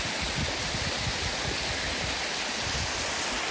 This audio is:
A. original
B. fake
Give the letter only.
A